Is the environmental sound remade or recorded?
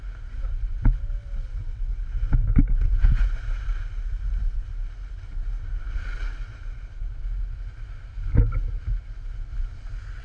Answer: recorded